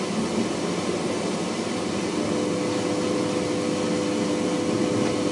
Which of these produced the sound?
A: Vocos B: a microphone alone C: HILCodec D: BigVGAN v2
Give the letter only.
B